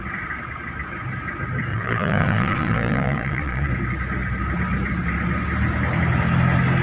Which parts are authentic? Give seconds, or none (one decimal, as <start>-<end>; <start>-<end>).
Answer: 0.0-1.7; 3.7-6.8